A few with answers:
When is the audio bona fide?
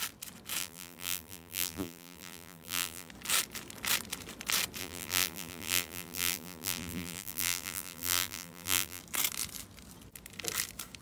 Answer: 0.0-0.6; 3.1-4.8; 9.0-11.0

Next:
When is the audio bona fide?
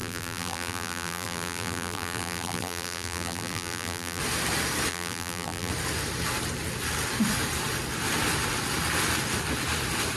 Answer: 4.2-4.9; 5.7-10.2